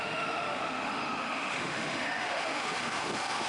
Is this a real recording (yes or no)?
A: no